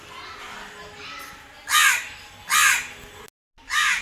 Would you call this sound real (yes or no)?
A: yes